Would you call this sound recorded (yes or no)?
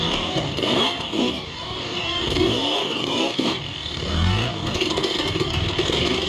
no